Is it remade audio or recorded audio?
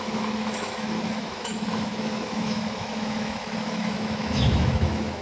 remade